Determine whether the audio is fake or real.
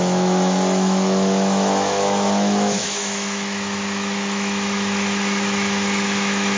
fake